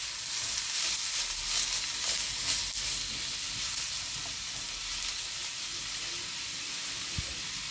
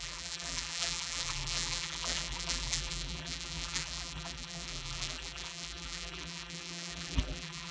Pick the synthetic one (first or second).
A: second